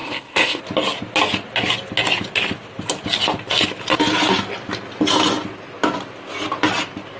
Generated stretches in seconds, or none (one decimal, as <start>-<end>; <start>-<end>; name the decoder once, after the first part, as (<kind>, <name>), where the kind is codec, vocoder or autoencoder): 0.0-0.6 (codec, ZipCodec)